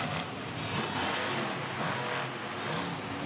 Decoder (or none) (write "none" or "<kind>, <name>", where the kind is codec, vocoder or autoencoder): none